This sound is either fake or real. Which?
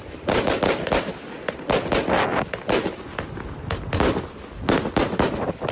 real